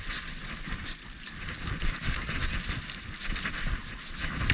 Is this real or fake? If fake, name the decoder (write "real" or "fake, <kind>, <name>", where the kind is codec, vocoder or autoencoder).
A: real